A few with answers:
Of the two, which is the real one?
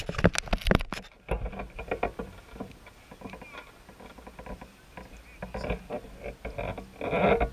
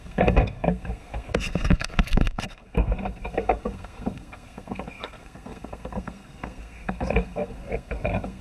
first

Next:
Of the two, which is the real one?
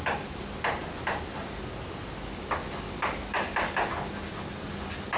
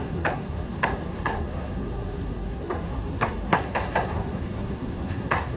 first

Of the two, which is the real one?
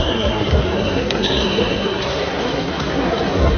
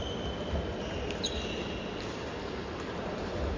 second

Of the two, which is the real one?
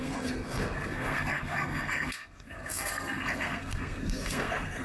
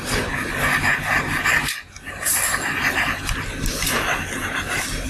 second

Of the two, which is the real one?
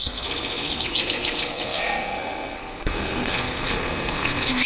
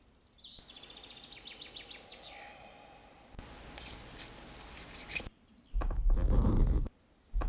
second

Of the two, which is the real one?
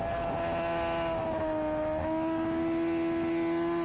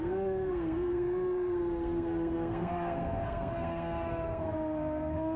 first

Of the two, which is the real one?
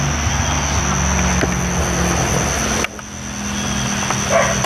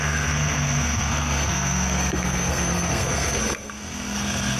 first